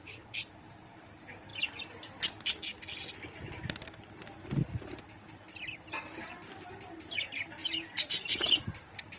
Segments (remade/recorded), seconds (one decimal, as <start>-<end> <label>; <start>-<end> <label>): 0.0-1.5 remade; 1.5-6.2 recorded; 6.2-9.2 remade